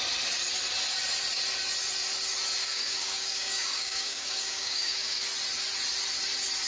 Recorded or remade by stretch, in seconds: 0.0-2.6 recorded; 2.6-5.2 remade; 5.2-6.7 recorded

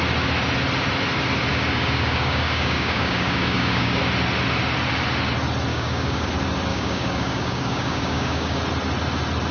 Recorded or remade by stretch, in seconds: 0.0-1.5 recorded; 1.5-4.0 remade; 4.0-5.7 recorded; 5.7-6.3 remade; 6.3-6.7 recorded; 6.7-8.6 remade; 8.6-9.5 recorded

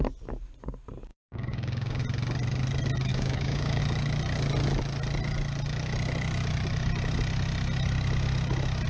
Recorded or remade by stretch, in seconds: 0.0-1.1 recorded; 1.1-2.0 remade; 2.0-3.1 recorded; 3.1-3.8 remade; 3.8-8.9 recorded

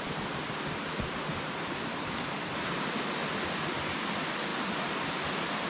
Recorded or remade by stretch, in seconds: 0.0-5.7 recorded

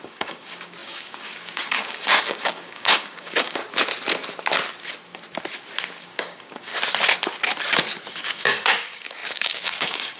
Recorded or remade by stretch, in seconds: 0.0-3.6 remade; 3.6-5.8 recorded; 5.8-6.7 remade; 6.7-8.1 recorded; 8.1-10.2 remade

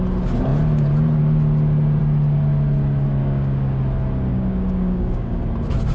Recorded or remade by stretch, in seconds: 0.0-3.2 recorded; 3.2-3.8 remade; 3.8-4.3 recorded; 4.3-5.4 remade; 5.4-5.9 recorded